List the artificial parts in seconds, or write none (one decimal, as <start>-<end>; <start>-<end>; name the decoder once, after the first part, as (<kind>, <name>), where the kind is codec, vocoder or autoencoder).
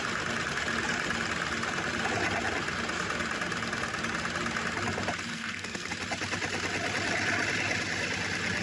5.3-5.9 (codec, SNAC)